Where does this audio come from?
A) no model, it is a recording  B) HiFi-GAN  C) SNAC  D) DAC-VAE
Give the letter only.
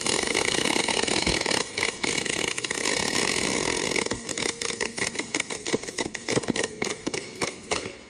C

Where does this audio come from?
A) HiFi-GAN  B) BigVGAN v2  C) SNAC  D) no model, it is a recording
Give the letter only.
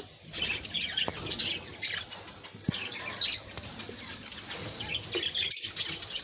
D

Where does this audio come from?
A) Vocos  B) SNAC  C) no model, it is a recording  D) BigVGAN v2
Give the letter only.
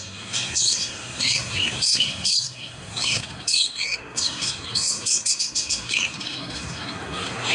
B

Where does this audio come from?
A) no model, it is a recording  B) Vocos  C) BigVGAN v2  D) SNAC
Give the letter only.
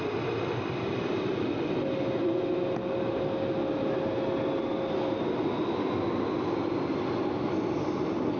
A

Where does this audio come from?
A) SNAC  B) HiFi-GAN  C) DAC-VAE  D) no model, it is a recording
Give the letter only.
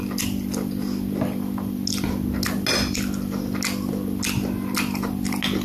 D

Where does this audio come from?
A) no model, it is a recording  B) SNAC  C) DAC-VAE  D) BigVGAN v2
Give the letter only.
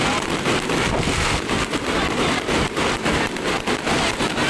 A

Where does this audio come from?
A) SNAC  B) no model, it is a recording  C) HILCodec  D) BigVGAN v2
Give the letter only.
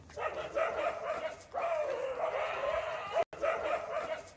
B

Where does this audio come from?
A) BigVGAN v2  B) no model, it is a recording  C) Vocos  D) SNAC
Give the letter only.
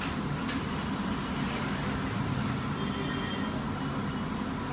B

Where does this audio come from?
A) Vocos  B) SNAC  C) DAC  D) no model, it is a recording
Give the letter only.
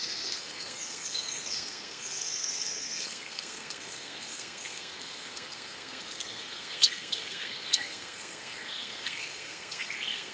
B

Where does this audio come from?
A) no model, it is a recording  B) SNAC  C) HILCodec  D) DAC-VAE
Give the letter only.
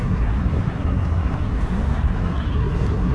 B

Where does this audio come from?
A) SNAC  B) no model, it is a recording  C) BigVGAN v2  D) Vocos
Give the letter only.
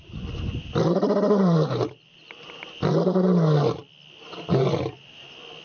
B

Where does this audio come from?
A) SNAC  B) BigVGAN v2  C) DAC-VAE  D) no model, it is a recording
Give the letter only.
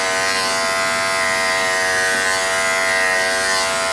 D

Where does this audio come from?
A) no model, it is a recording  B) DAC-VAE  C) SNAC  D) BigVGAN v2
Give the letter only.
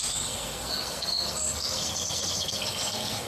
C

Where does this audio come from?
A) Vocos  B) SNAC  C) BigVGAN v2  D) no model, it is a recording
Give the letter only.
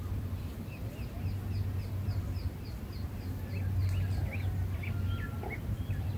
D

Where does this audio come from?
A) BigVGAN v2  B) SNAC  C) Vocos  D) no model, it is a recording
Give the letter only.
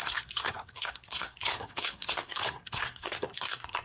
B